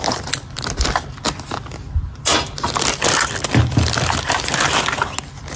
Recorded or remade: recorded